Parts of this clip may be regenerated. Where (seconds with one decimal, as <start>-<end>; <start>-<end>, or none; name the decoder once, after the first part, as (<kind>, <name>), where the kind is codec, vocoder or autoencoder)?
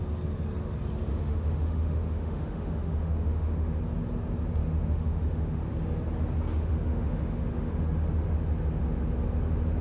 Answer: 1.1-3.8 (autoencoder, DAC-VAE); 4.6-5.6; 6.5-7.8